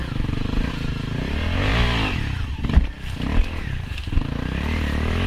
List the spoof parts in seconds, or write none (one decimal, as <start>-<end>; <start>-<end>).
0.0-0.7